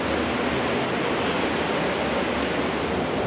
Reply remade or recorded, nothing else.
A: recorded